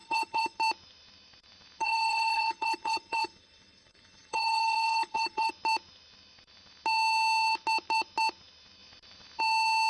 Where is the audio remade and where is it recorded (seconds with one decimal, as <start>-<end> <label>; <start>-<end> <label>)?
0.0-0.6 remade; 0.6-1.8 recorded; 1.8-5.5 remade; 5.5-9.9 recorded